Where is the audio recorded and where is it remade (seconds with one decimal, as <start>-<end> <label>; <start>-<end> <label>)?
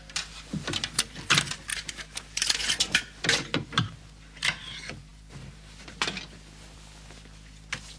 0.0-1.7 recorded; 1.7-3.2 remade; 3.2-8.0 recorded